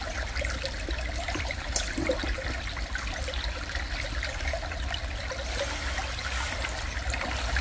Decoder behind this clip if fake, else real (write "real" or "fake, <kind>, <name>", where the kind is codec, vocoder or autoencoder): real